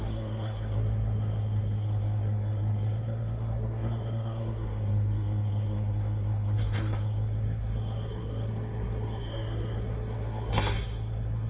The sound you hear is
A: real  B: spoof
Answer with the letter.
B